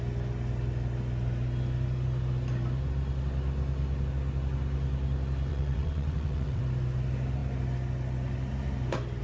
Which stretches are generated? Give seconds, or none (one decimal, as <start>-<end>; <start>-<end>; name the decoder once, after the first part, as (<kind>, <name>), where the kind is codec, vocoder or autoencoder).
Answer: 5.5-6.6 (vocoder, WaveNeXt)